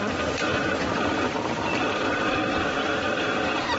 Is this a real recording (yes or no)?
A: no